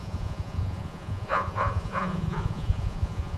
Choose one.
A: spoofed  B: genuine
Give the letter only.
A